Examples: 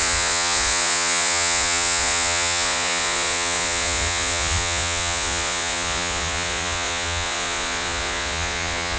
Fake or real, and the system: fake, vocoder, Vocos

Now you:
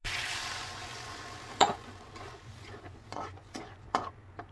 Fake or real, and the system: fake, vocoder, Vocos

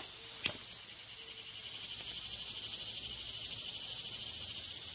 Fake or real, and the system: real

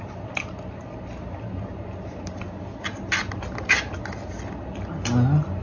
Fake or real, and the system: real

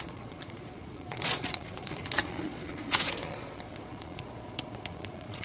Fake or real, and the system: fake, vocoder, Vocos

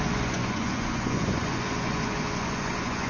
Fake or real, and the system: fake, vocoder, Vocos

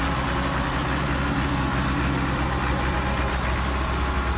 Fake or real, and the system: real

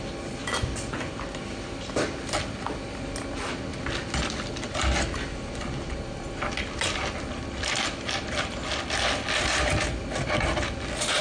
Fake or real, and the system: real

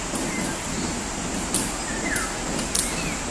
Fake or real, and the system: real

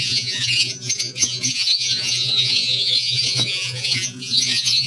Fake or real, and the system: fake, vocoder, Vocos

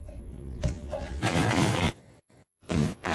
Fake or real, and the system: fake, vocoder, Vocos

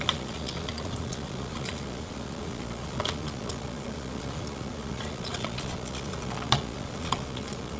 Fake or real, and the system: fake, vocoder, Vocos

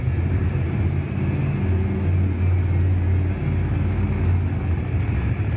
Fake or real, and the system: real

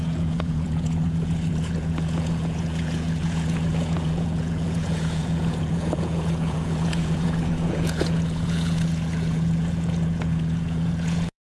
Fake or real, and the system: fake, vocoder, Vocos